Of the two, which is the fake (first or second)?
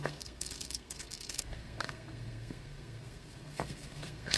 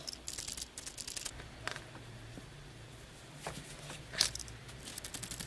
first